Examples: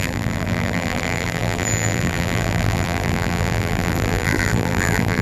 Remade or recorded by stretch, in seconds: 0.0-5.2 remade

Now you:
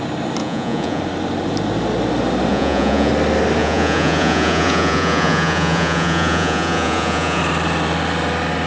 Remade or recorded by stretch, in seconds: 0.0-0.4 recorded; 0.4-1.0 remade; 1.0-2.5 recorded; 2.5-3.1 remade; 3.1-3.6 recorded; 3.6-7.4 remade; 7.4-8.7 recorded

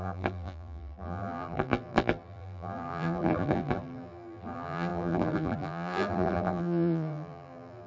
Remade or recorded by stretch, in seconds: 0.0-7.9 remade

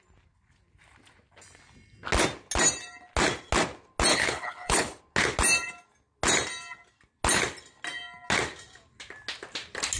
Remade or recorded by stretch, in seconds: 0.0-4.1 recorded; 4.1-5.0 remade; 5.0-10.0 recorded

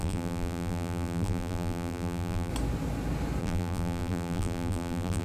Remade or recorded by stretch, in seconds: 0.0-2.5 remade; 2.5-3.4 recorded; 3.4-5.2 remade

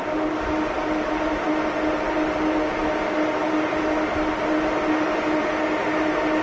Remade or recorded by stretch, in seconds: 0.0-6.4 recorded